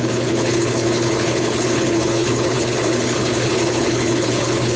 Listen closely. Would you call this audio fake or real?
fake